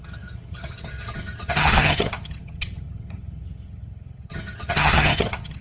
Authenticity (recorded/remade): remade